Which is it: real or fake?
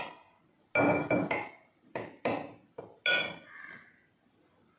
real